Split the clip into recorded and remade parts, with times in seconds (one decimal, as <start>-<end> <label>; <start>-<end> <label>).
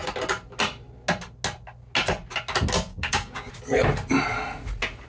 0.0-2.9 recorded; 2.9-3.5 remade; 3.5-5.1 recorded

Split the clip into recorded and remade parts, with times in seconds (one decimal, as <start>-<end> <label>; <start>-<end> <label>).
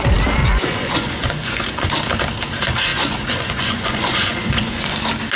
0.0-0.4 recorded; 0.4-1.9 remade; 1.9-2.9 recorded; 2.9-4.9 remade; 4.9-5.4 recorded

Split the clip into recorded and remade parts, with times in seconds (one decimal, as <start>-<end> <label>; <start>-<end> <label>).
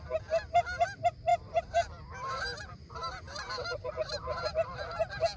0.0-1.3 recorded; 1.3-4.5 remade; 4.5-5.4 recorded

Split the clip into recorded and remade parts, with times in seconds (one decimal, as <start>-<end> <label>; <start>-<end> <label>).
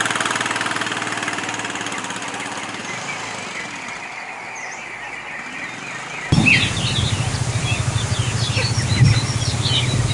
0.0-10.1 recorded